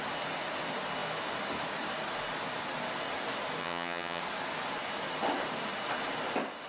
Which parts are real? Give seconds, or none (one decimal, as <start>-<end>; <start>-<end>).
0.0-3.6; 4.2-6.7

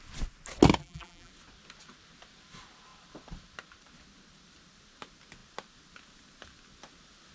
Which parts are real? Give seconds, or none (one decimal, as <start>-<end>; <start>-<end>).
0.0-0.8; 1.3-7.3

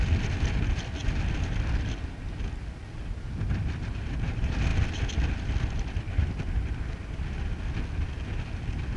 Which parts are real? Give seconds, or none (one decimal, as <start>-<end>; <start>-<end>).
0.0-9.0

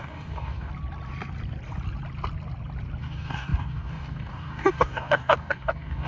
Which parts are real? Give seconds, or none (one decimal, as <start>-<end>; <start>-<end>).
0.7-3.0